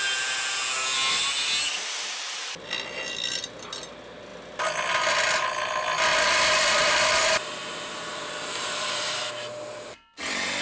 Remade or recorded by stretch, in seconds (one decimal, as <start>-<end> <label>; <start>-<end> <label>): 0.0-6.1 recorded; 6.1-9.3 remade; 9.3-10.6 recorded